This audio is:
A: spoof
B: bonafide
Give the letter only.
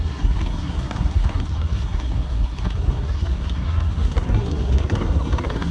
A